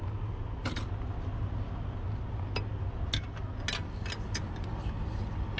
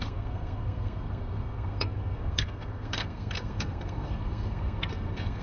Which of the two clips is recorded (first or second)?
first